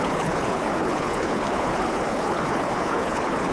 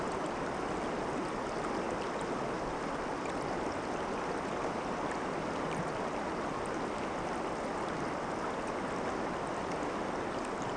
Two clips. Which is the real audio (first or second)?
second